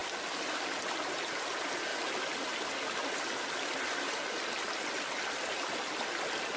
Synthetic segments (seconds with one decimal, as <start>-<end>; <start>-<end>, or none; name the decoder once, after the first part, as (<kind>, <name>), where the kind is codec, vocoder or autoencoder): none